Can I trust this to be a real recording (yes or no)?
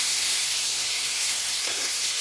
no